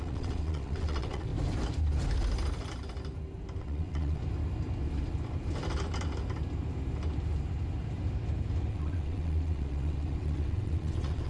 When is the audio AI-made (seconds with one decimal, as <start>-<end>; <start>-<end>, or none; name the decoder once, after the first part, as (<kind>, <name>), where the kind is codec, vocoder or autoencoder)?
0.0-1.3 (vocoder, WaveNeXt); 3.6-4.2; 8.7-11.3